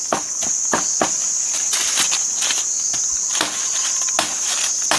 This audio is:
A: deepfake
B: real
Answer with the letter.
B